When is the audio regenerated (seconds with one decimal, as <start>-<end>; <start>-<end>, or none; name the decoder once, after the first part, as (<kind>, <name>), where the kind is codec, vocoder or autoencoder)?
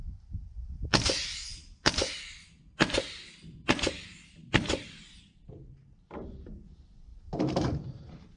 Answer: 7.1-8.0 (vocoder, BigVGAN v2)